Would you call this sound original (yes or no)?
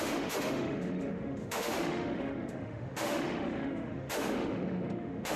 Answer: no